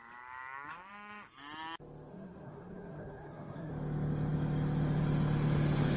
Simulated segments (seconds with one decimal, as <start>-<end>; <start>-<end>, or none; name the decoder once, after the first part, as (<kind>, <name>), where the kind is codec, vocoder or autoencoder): 2.1-3.7 (codec, SNAC)